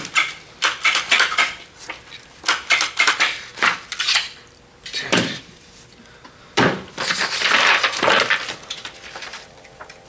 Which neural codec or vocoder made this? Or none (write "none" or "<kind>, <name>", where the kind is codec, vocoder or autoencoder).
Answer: vocoder, BigVGAN v2